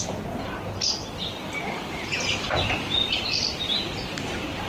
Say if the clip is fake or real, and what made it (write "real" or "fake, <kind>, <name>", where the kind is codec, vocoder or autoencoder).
real